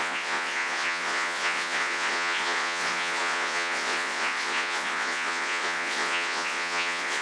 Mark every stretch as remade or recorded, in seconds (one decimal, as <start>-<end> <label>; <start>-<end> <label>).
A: 0.0-7.2 remade